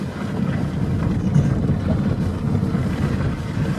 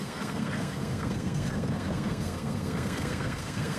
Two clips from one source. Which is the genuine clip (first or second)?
first